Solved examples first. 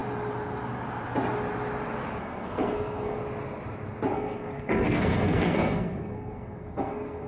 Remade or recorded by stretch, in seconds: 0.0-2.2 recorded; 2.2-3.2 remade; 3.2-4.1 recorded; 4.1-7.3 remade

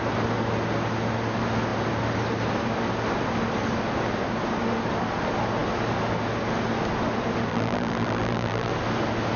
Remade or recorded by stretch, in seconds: 0.0-7.5 recorded; 7.5-8.7 remade; 8.7-9.4 recorded

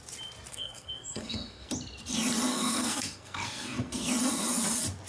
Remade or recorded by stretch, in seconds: 0.0-0.5 recorded; 0.5-1.7 remade; 1.7-2.5 recorded; 2.5-4.1 remade; 4.1-5.1 recorded

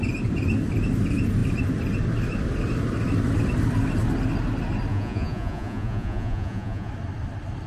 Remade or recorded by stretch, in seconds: 0.0-4.9 recorded; 4.9-6.9 remade; 6.9-7.7 recorded

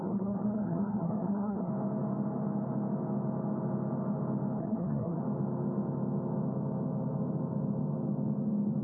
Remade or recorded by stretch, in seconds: 0.0-1.7 remade; 1.7-4.6 recorded; 4.6-5.2 remade; 5.2-8.8 recorded

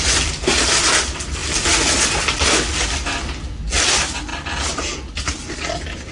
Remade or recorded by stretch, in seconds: 0.0-6.1 recorded

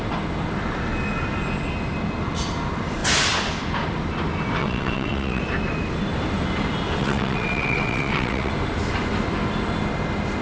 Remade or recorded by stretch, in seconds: 0.0-4.6 recorded; 4.6-5.4 remade; 5.4-7.0 recorded; 7.0-8.5 remade; 8.5-10.4 recorded